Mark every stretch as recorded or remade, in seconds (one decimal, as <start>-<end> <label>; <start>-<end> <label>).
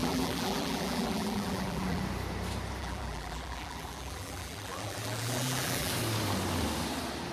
0.0-2.0 remade; 2.0-2.8 recorded; 2.8-5.9 remade; 5.9-7.3 recorded